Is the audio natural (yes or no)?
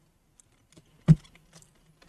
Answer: yes